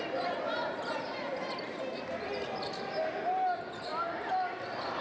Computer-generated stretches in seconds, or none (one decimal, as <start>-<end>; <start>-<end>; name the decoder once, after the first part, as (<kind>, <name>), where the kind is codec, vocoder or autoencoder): none